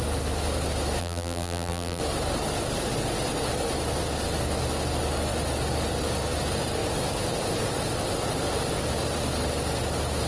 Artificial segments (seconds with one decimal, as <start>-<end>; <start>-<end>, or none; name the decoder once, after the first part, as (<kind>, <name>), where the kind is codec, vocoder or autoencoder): 1.0-2.0 (vocoder, BigVGAN v2)